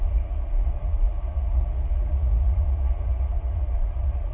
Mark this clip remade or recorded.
remade